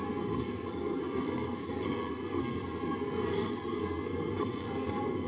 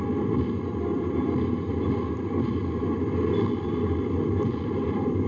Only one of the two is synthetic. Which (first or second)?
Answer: first